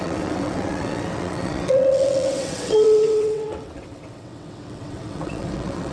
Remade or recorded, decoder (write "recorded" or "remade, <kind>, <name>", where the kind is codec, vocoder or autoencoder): remade, vocoder, WaveNeXt